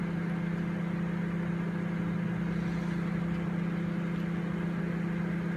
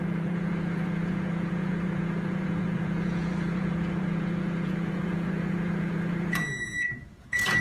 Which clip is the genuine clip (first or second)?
first